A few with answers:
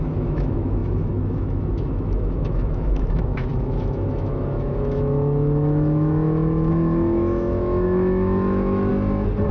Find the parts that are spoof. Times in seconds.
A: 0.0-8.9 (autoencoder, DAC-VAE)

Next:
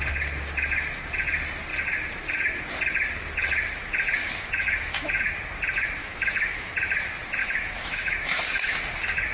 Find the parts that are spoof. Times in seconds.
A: 4.2-5.2 (autoencoder, DAC-VAE); 6.0-6.7; 7.4-8.8